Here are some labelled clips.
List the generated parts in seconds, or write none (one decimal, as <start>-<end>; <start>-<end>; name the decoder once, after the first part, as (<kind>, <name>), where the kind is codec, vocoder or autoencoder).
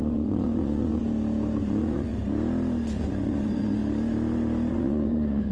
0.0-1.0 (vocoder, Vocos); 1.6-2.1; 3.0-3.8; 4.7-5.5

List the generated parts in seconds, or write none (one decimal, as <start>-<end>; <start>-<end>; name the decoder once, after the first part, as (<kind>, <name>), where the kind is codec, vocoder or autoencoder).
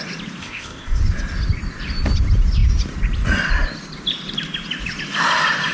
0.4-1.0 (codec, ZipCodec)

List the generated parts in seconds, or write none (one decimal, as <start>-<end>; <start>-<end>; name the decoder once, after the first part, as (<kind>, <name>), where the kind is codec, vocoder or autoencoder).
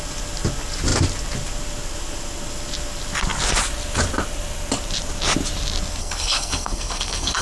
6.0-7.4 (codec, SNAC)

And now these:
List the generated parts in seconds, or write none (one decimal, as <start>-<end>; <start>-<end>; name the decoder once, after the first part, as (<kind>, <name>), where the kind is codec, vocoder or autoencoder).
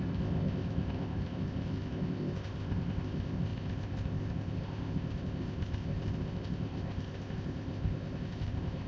0.0-8.9 (codec, ZipCodec)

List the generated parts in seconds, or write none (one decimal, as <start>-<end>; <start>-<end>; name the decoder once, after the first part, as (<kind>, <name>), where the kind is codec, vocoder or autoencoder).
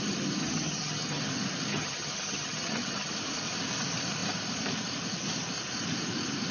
0.4-1.2 (vocoder, HiFi-GAN); 1.7-3.1